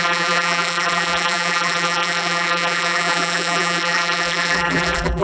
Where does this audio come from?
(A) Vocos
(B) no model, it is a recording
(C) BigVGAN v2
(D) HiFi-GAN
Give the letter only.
C